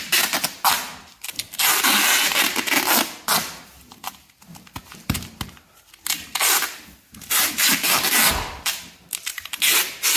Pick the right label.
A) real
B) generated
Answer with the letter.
A